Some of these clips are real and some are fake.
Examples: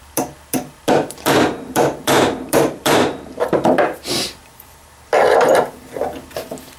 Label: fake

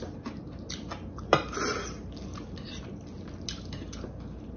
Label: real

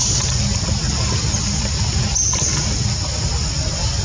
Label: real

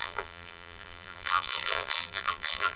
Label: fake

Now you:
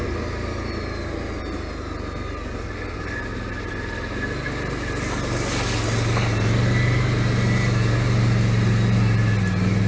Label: real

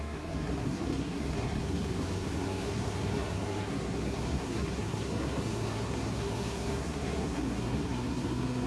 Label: fake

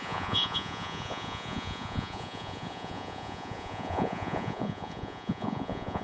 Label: fake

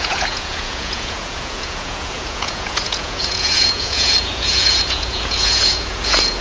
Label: fake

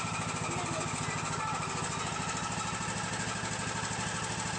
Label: real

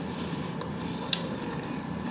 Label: real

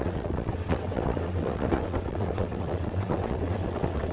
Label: fake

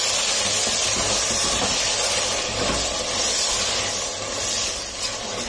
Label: real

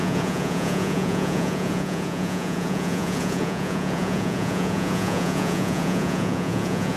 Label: fake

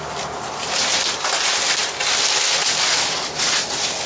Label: real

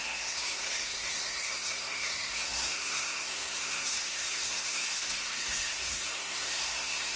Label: fake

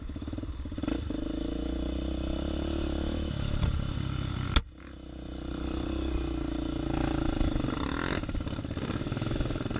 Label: real